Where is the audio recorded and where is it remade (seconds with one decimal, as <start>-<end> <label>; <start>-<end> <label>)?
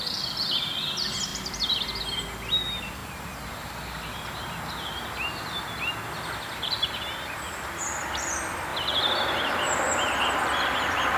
0.0-1.3 recorded; 1.3-2.0 remade; 2.0-8.7 recorded; 8.7-9.8 remade; 9.8-11.2 recorded